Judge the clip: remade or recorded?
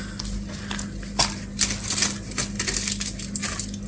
recorded